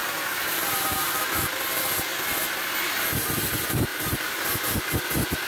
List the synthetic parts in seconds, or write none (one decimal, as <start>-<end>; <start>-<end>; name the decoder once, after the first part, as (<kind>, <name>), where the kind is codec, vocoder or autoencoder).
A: 0.0-1.3 (vocoder, BigVGAN v2); 3.9-4.4